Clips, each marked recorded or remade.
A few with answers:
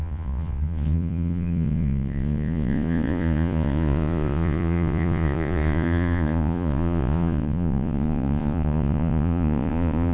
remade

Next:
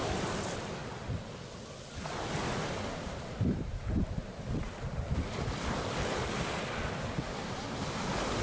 recorded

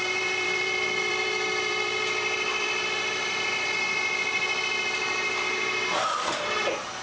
remade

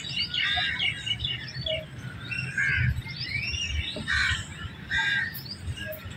recorded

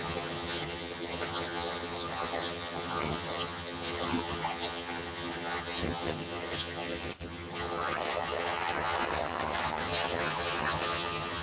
remade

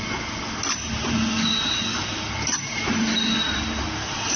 recorded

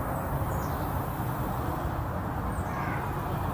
recorded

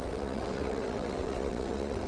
remade